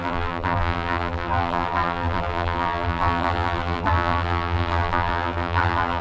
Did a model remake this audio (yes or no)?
yes